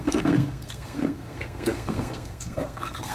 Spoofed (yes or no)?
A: yes